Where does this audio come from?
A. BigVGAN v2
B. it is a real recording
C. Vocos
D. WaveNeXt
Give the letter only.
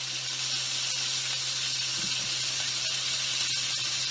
B